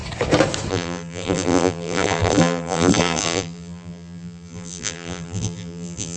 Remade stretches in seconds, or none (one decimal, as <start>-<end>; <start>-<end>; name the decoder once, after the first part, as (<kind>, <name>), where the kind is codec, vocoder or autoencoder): 0.7-6.2 (vocoder, BigVGAN v2)